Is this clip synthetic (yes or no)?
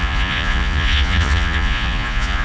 yes